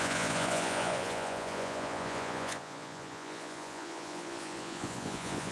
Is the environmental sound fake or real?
fake